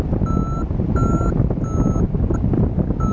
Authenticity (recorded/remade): recorded